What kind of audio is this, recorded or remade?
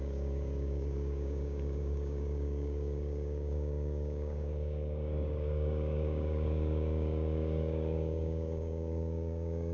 remade